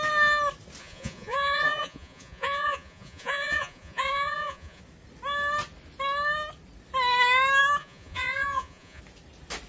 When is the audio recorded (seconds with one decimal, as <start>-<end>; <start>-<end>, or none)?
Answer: 0.0-0.8; 4.8-7.8; 9.0-9.7

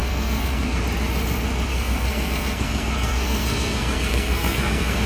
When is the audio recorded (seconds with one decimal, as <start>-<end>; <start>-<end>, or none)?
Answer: 0.8-1.7

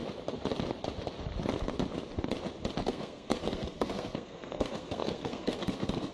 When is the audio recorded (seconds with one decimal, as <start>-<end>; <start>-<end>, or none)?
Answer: 0.0-2.8

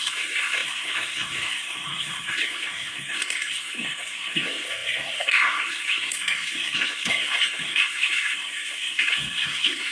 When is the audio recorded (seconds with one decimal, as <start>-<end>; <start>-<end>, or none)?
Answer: none

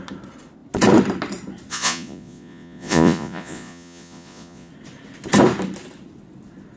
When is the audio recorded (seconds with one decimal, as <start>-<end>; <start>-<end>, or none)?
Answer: 0.0-1.7; 4.7-6.8

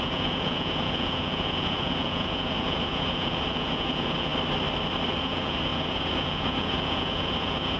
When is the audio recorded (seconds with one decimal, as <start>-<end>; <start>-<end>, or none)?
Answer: 4.3-5.2

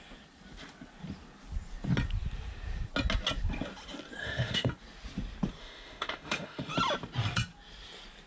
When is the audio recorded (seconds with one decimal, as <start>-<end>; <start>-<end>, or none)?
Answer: 0.0-4.2; 4.7-5.6; 6.7-8.3